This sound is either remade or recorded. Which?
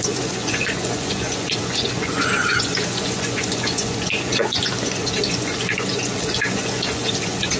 remade